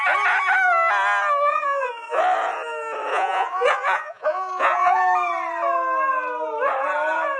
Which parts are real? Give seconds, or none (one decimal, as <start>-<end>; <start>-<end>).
0.0-1.5; 2.2-3.1; 5.0-7.4